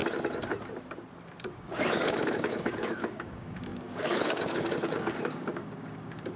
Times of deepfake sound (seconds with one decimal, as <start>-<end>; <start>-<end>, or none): 1.5-6.4